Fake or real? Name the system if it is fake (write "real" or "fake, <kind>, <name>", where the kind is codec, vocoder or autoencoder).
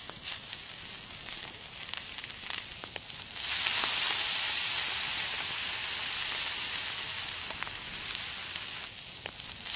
real